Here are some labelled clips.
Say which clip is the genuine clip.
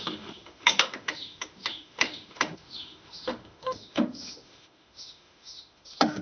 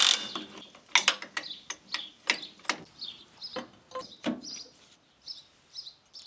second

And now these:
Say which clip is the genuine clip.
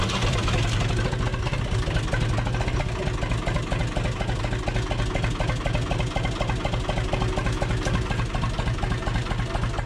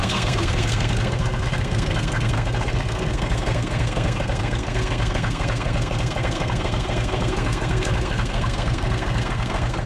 first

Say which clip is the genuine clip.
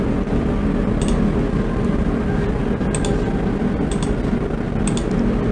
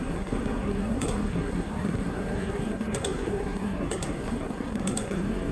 first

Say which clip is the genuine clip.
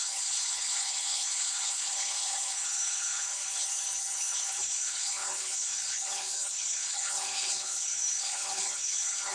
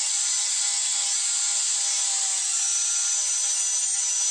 second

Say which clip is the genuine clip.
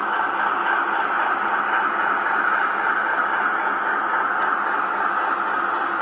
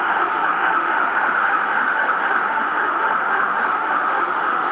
first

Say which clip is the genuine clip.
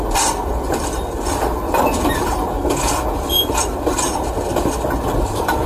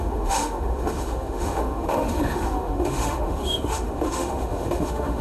first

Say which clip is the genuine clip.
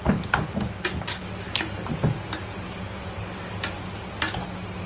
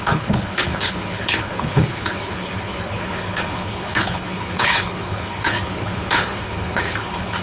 first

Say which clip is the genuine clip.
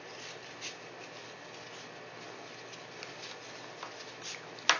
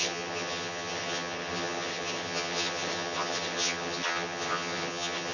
first